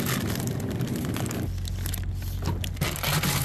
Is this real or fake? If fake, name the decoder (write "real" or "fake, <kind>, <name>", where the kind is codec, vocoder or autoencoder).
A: real